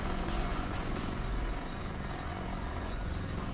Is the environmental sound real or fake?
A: fake